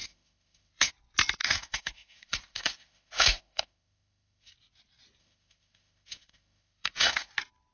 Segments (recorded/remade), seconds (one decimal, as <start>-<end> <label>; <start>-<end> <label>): 0.0-0.9 remade; 0.9-1.4 recorded; 1.4-4.5 remade; 4.5-5.2 recorded; 5.2-7.3 remade; 7.3-7.7 recorded